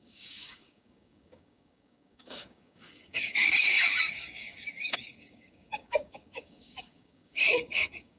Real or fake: fake